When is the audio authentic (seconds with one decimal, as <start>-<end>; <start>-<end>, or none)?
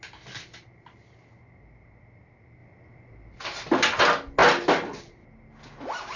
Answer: 0.0-6.2